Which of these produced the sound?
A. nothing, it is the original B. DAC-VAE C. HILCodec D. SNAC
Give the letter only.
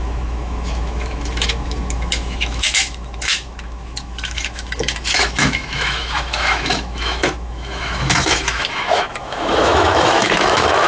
B